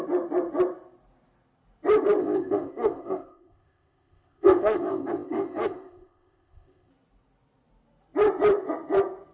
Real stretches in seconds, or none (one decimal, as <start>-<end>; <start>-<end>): 0.0-2.2; 6.9-9.3